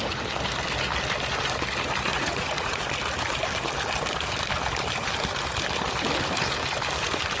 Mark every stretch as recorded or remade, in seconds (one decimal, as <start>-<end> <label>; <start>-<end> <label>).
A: 0.0-2.1 recorded; 2.1-2.8 remade; 2.8-7.4 recorded